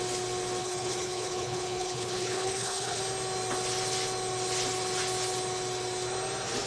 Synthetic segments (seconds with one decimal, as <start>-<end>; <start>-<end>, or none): 0.6-3.0